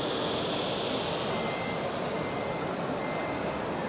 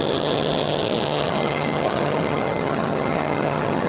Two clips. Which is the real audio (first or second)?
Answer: first